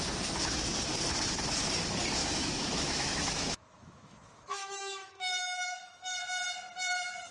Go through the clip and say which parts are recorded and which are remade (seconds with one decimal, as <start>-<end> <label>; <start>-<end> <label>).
0.0-2.2 recorded; 2.2-6.2 remade; 6.2-7.3 recorded